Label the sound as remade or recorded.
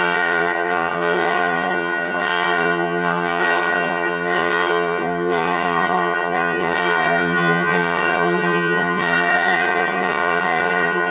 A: remade